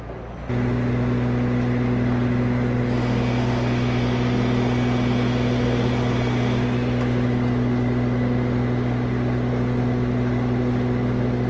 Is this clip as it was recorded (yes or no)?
yes